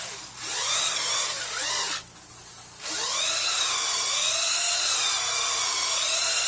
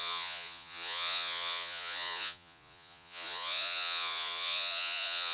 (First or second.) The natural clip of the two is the first